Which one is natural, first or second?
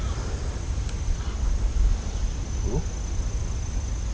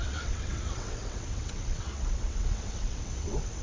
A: first